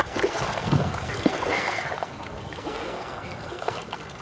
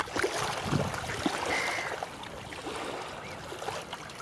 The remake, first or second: first